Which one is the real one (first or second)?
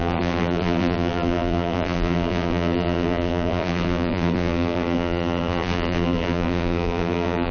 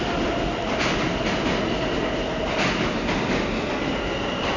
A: second